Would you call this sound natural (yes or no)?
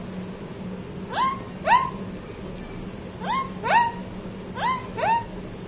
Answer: yes